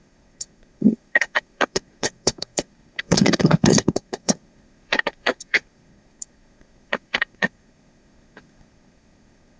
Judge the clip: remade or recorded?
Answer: remade